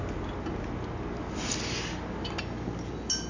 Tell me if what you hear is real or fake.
real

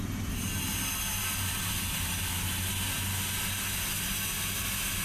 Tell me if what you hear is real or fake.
real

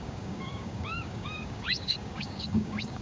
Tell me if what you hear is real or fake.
fake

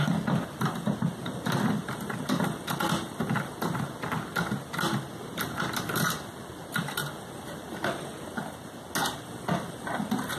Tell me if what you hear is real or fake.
real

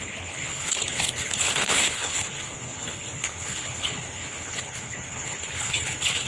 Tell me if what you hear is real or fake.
fake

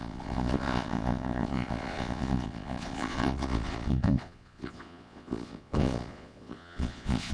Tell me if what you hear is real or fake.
fake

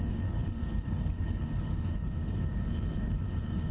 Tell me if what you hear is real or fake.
fake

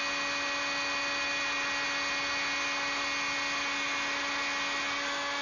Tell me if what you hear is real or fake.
real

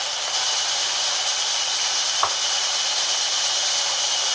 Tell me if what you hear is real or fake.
real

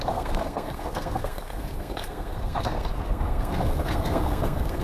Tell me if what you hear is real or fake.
fake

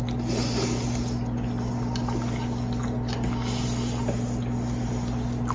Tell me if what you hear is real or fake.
real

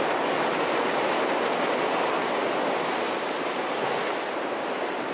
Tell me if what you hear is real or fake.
real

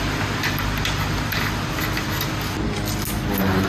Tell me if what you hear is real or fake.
real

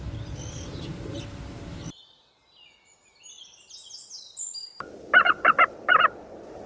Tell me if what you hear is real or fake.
real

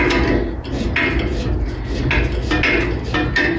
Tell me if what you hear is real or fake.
real